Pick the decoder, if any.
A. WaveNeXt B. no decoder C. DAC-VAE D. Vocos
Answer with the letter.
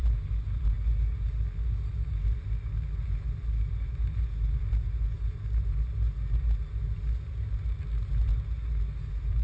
B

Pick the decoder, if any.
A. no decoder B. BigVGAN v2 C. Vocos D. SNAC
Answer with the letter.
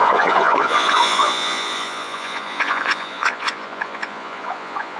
C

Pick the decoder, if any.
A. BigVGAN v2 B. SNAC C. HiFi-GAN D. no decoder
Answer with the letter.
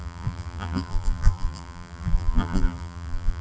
A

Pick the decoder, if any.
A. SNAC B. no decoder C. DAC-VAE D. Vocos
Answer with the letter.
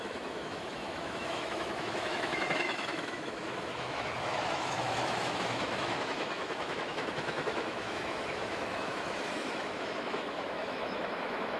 C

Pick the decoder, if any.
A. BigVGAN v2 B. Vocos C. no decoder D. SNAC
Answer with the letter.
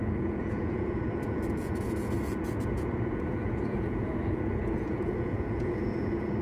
B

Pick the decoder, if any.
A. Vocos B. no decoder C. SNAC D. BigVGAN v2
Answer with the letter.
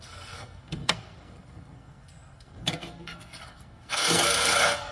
C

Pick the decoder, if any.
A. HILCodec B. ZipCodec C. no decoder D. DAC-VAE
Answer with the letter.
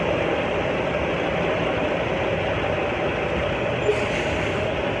C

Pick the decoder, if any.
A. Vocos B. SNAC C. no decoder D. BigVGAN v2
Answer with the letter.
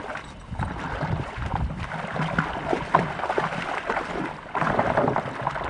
C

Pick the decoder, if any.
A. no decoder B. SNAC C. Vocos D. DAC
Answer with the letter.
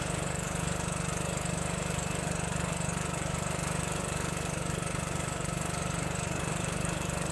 D